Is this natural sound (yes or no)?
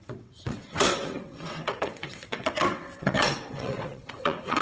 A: no